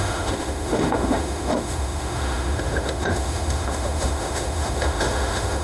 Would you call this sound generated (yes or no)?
yes